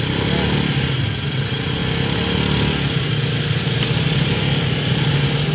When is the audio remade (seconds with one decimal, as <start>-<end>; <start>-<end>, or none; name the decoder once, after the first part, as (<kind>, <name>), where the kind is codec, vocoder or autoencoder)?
none